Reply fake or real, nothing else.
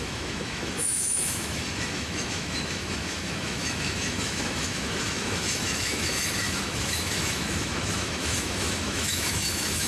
fake